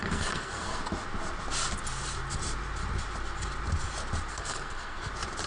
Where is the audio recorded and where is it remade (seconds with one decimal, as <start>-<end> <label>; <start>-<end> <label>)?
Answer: 0.0-0.8 remade; 0.8-4.3 recorded; 4.3-5.1 remade; 5.1-5.5 recorded